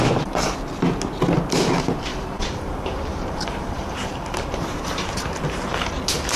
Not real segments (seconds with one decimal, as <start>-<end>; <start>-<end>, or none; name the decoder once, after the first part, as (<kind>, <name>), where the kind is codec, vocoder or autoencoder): 2.1-5.9 (vocoder, BigVGAN v2)